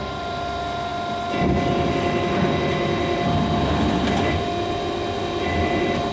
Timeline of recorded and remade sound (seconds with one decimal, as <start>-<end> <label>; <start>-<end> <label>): 0.0-0.9 recorded; 0.9-1.9 remade; 1.9-6.1 recorded